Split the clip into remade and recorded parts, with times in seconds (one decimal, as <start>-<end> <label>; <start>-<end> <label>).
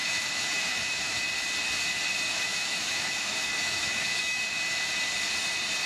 0.0-1.2 remade; 1.2-2.3 recorded; 2.3-4.4 remade; 4.4-5.9 recorded